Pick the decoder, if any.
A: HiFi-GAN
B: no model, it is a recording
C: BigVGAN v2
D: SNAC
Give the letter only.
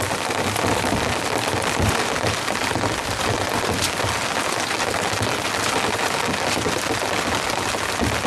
B